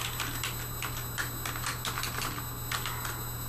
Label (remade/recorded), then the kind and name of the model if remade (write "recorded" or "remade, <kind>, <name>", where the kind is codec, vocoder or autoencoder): recorded